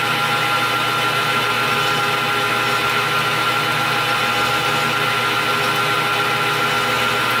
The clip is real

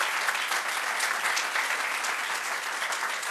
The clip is real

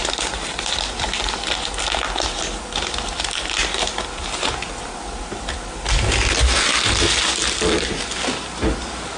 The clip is real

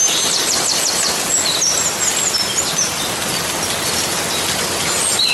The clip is real